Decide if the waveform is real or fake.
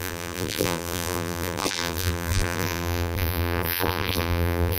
fake